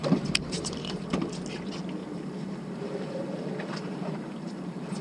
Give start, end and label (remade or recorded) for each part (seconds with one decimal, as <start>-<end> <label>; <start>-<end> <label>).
0.0-1.3 remade; 1.3-2.0 recorded; 2.0-5.0 remade